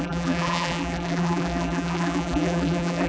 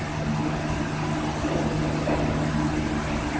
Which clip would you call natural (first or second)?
second